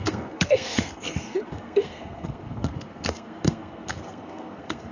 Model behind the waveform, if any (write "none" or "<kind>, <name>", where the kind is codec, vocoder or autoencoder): codec, SNAC